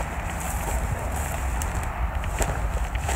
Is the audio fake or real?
real